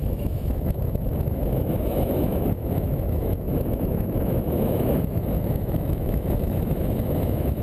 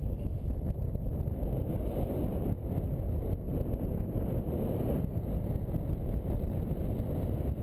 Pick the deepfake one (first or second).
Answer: first